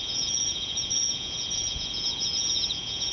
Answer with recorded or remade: remade